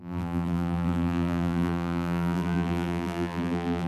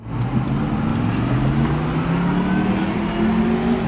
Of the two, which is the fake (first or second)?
first